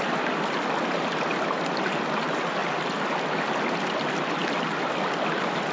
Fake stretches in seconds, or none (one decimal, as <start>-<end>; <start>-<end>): none